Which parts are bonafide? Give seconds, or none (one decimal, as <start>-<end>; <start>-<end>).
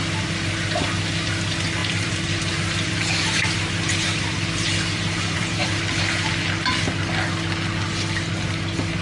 0.0-1.8; 5.8-9.0